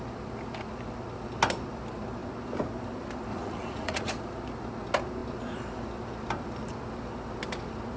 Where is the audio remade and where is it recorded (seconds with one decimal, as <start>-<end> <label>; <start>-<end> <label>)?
0.0-3.3 recorded; 3.3-4.1 remade; 4.1-8.0 recorded

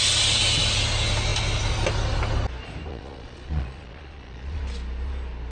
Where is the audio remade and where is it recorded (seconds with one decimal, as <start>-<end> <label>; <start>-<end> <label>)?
0.0-2.9 recorded; 2.9-4.6 remade; 4.6-5.5 recorded